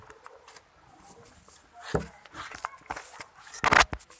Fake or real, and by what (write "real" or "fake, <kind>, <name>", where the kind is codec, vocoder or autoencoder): real